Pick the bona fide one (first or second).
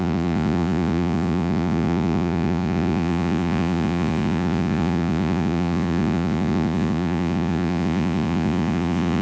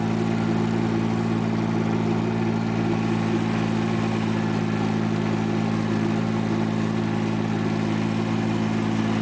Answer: second